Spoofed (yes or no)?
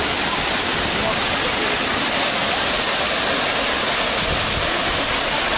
no